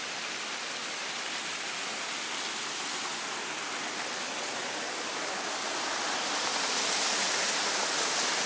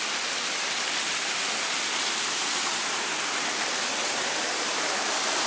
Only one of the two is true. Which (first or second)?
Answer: first